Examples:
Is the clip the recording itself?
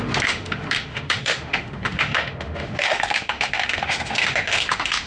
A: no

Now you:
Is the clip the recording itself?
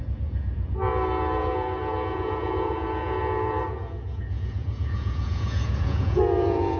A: no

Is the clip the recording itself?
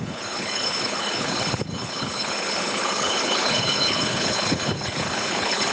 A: no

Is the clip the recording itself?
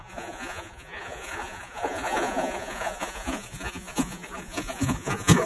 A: no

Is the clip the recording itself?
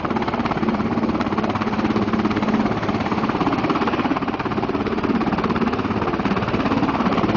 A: no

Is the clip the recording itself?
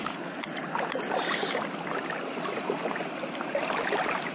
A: yes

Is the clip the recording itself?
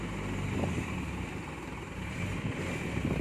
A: yes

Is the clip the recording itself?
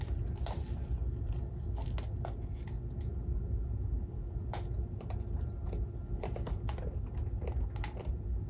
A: yes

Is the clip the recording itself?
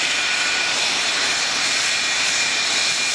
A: yes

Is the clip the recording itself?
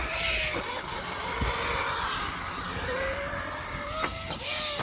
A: yes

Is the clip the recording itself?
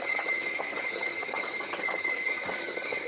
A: no